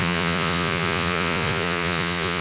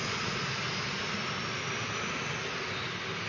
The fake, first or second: first